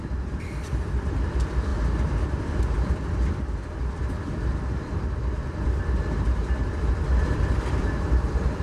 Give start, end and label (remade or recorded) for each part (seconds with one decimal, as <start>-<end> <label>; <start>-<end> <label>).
0.0-1.7 remade; 1.7-2.6 recorded; 2.6-8.6 remade